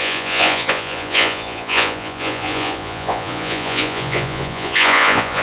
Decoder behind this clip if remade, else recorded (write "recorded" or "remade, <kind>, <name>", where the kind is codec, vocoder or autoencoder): remade, vocoder, Vocos